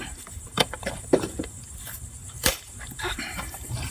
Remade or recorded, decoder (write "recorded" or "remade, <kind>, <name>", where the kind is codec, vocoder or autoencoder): remade, vocoder, BigVGAN v2